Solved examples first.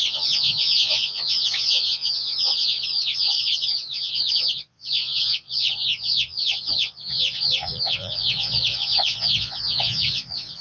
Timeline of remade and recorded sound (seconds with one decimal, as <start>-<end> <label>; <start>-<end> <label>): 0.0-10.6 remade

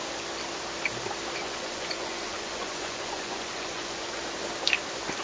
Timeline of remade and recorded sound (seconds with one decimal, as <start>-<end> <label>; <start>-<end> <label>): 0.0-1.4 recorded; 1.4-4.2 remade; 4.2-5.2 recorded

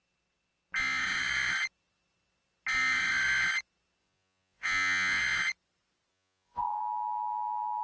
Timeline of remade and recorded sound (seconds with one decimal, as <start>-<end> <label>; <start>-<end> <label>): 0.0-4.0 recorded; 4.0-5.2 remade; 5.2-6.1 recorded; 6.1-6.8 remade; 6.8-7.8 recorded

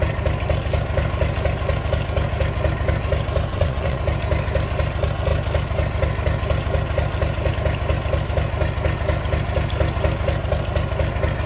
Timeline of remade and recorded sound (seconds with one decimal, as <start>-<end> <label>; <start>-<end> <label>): 0.0-3.5 recorded; 3.5-4.0 remade; 4.0-11.5 recorded

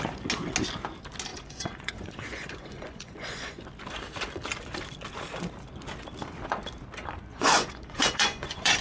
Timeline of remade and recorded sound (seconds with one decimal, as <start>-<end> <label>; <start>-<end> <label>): 0.0-1.3 recorded; 1.3-3.6 remade; 3.6-7.3 recorded; 7.3-8.8 remade

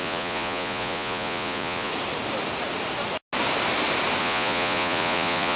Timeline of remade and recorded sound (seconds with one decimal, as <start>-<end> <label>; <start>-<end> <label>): 0.0-1.9 remade; 1.9-4.2 recorded; 4.2-5.6 remade

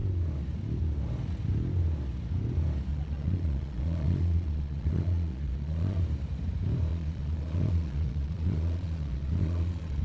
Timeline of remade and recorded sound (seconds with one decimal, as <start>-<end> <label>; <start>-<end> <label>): 0.0-2.9 recorded; 2.9-6.0 remade; 6.0-6.9 recorded; 6.9-10.0 remade

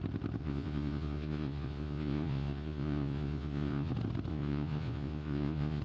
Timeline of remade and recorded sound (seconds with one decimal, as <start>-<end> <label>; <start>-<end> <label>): 0.0-0.4 recorded; 0.4-3.9 remade; 3.9-4.3 recorded; 4.3-5.8 remade